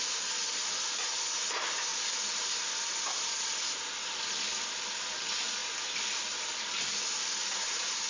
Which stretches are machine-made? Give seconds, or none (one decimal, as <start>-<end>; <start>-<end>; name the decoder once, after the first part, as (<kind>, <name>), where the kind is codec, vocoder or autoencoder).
1.9-2.7 (vocoder, BigVGAN v2); 7.4-8.1

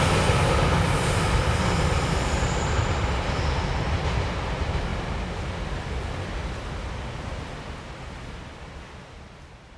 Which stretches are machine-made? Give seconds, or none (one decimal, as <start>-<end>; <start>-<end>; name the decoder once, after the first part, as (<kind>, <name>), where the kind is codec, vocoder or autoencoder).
none

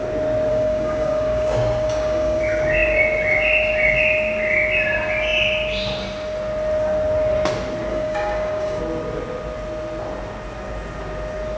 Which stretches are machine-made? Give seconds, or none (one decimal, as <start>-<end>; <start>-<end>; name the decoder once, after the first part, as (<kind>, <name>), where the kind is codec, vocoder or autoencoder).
0.5-2.4 (codec, DAC); 7.9-8.8

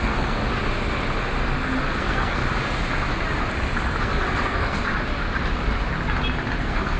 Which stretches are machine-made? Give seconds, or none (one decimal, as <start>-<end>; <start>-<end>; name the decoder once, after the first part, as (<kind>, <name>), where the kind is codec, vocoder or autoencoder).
0.0-0.4 (codec, SNAC); 1.8-2.4; 4.0-4.8; 6.6-7.0

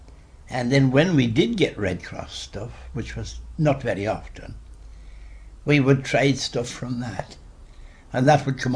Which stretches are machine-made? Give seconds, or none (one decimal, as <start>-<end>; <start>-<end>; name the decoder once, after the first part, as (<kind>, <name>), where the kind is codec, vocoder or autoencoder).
0.0-4.9 (vocoder, BigVGAN v2); 6.4-8.8

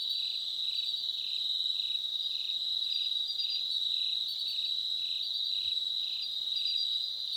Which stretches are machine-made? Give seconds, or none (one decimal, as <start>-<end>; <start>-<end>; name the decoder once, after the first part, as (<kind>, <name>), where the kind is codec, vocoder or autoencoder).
none

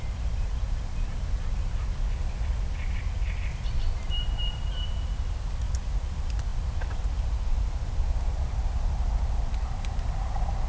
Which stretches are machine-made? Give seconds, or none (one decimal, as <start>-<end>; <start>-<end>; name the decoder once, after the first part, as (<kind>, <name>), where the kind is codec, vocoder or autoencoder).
none